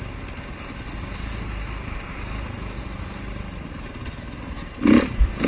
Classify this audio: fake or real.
real